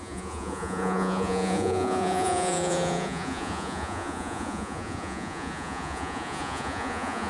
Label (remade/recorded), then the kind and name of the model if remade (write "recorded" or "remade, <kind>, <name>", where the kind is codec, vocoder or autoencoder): remade, vocoder, Vocos